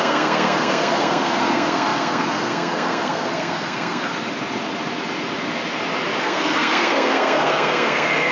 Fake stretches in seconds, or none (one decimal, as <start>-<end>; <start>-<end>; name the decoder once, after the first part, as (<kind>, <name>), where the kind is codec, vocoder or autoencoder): 0.0-4.1 (codec, SNAC); 6.2-8.3